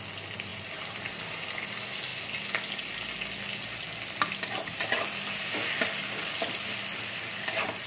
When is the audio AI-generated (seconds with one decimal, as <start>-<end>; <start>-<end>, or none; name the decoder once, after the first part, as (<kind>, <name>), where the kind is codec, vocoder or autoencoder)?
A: none